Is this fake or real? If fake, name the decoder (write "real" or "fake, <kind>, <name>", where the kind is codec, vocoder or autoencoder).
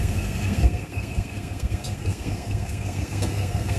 fake, codec, SNAC